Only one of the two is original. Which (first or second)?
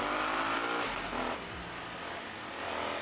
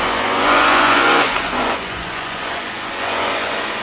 first